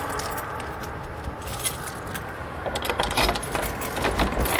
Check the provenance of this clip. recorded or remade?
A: recorded